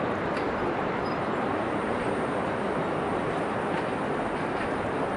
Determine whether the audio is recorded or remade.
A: remade